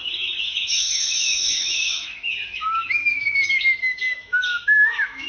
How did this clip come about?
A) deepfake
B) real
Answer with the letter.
A